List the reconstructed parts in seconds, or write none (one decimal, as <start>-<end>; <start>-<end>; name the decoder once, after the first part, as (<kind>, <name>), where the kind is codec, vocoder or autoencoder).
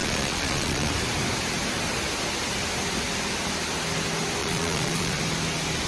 0.0-0.9 (vocoder, Vocos); 4.4-5.2